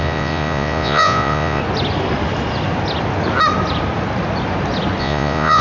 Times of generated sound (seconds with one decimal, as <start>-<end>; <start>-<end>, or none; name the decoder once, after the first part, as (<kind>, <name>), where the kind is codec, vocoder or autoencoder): 0.0-1.6 (vocoder, Vocos); 5.0-5.6